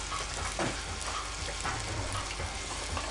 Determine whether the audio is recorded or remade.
recorded